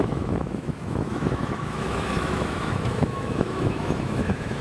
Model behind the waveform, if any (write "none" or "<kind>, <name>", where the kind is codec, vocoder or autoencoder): autoencoder, DAC-VAE